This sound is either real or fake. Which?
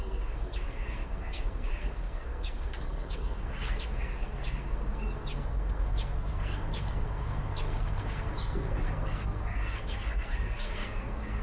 fake